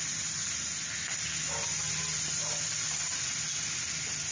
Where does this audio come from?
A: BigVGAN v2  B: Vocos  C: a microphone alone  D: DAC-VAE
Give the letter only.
C